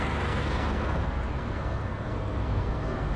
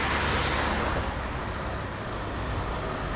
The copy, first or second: first